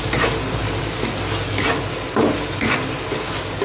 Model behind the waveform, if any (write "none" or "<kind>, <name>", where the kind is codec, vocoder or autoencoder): none